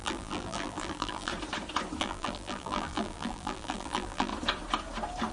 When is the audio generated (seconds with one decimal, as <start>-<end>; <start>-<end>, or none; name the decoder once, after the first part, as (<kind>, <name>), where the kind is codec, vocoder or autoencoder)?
0.0-1.3 (vocoder, BigVGAN v2); 2.0-4.3